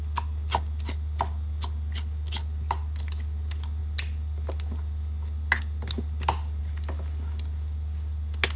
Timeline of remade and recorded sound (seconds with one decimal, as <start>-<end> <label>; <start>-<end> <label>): 0.0-8.6 recorded